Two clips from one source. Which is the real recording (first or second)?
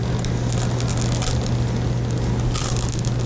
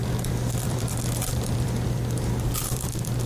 first